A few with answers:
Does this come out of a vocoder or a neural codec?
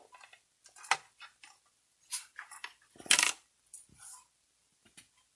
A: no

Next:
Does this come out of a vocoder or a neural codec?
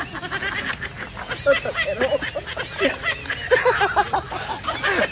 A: no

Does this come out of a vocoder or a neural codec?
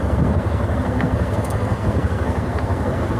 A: yes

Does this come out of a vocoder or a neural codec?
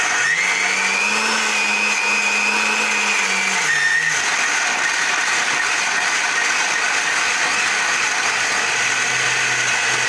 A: no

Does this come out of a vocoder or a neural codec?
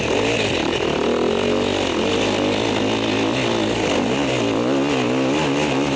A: no